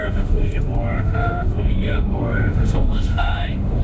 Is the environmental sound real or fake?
fake